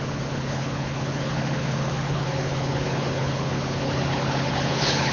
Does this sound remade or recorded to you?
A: remade